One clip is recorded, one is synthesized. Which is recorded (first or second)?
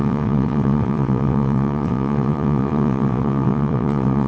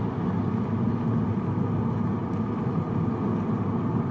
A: second